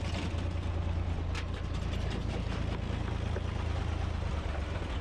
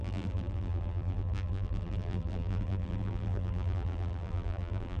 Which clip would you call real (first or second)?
first